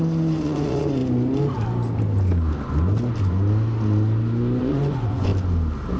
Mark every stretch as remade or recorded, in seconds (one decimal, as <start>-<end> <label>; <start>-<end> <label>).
0.0-1.0 remade; 1.0-4.6 recorded; 4.6-5.3 remade; 5.3-6.0 recorded